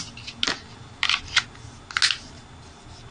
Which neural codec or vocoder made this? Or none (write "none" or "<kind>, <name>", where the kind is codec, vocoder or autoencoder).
none